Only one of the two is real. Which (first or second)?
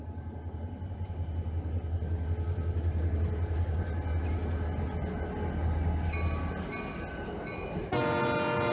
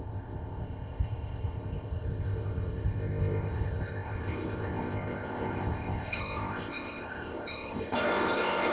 first